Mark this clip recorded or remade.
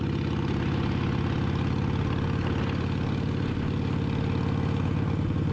recorded